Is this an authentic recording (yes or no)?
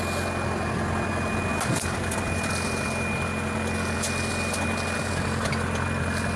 yes